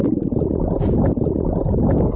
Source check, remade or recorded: recorded